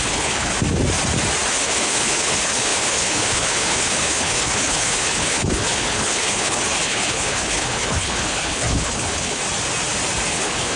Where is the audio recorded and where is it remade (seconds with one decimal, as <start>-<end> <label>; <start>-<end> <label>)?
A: 0.0-0.5 remade; 0.5-1.5 recorded; 1.5-9.4 remade; 9.4-10.3 recorded; 10.3-10.8 remade